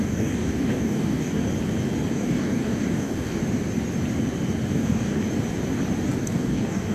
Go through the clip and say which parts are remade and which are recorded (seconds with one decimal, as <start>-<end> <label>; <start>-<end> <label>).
0.0-1.4 remade; 1.4-2.1 recorded; 2.1-3.4 remade; 3.4-4.7 recorded; 4.7-5.2 remade; 5.2-6.2 recorded; 6.2-6.9 remade